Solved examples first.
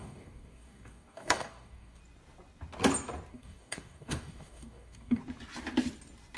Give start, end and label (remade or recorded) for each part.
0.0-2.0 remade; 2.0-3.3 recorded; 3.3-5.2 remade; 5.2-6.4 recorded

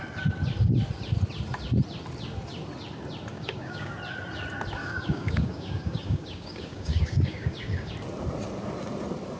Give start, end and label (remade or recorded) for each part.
0.0-3.3 recorded; 3.3-3.9 remade; 3.9-4.8 recorded; 4.8-7.9 remade; 7.9-9.4 recorded

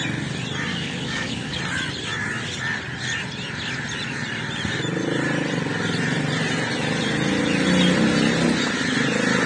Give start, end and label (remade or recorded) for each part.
0.0-0.7 recorded; 0.7-1.6 remade; 1.6-9.5 recorded

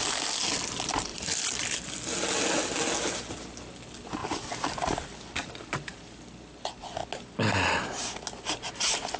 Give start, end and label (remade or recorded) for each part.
0.0-9.2 recorded

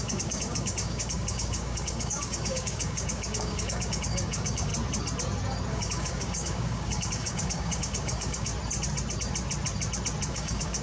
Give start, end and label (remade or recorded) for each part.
0.0-4.7 remade; 4.7-5.7 recorded; 5.7-8.5 remade; 8.5-10.3 recorded; 10.3-10.8 remade